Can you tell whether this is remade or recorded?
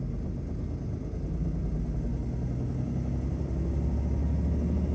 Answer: recorded